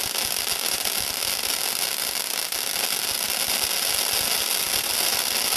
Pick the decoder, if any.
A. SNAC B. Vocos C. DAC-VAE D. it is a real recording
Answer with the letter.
D